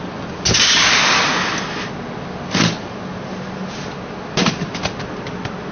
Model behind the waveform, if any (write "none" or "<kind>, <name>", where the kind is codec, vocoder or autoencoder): none